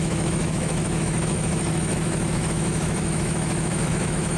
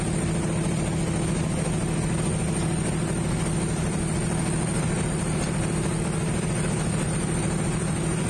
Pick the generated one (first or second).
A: first